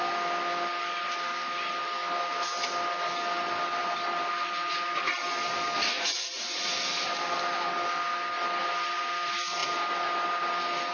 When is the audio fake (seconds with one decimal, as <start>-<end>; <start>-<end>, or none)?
none

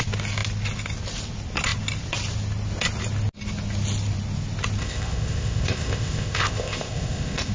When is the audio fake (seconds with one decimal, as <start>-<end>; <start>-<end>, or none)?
4.8-7.5

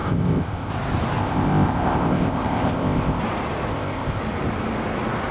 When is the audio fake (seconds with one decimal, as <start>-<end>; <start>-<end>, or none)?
0.0-0.7; 1.2-3.2; 3.7-4.2

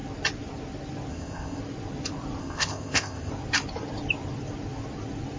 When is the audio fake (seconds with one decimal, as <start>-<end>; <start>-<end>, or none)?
1.1-1.6; 2.4-3.3

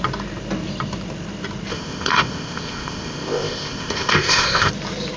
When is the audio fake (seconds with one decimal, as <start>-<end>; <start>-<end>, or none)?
1.7-4.7

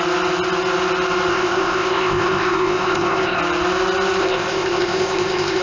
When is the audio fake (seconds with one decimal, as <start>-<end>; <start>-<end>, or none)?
1.3-3.4; 4.2-5.6

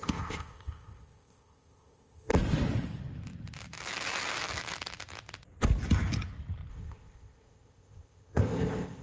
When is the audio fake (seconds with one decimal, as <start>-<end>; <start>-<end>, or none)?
0.0-2.3; 6.7-9.0